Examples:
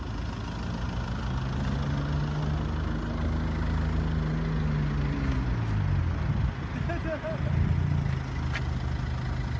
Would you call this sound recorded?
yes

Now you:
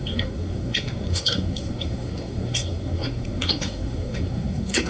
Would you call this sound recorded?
no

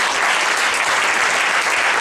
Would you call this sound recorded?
yes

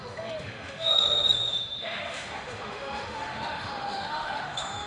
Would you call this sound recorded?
no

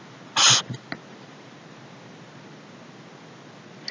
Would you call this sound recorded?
yes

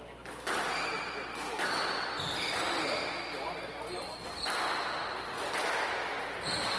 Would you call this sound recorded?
yes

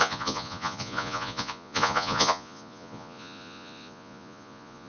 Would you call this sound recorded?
no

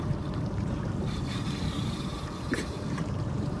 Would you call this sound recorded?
no